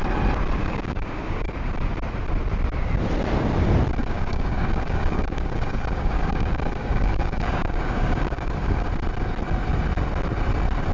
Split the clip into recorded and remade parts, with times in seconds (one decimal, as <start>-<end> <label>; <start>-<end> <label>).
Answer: 0.0-0.6 recorded; 0.6-1.5 remade; 1.5-4.0 recorded; 4.0-8.9 remade; 8.9-10.9 recorded

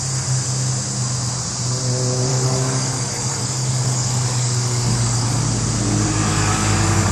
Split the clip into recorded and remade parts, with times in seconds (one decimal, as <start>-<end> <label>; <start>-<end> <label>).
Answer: 0.0-2.3 recorded; 2.3-5.4 remade; 5.4-6.3 recorded; 6.3-7.1 remade

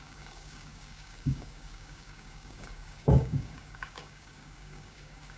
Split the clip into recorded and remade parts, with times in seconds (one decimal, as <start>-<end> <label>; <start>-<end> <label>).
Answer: 0.0-5.4 remade

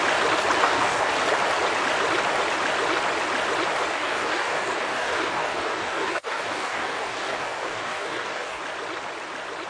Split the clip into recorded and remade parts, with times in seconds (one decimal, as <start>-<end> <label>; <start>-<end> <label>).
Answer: 0.0-0.6 recorded; 0.6-1.1 remade; 1.1-3.9 recorded; 3.9-8.6 remade; 8.6-9.7 recorded

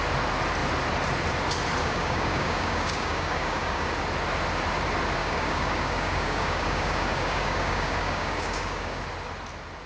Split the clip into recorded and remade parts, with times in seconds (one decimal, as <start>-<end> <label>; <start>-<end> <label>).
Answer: 0.0-1.8 recorded; 1.8-3.9 remade; 3.9-5.2 recorded; 5.2-9.0 remade; 9.0-9.9 recorded